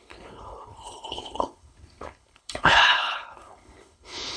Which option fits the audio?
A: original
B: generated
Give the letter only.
B